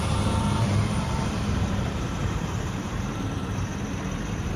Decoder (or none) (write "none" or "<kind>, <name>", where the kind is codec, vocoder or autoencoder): vocoder, BigVGAN v2